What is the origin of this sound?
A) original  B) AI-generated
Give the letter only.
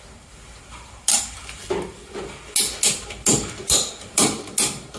A